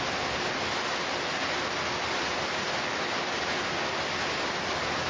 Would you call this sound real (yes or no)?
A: yes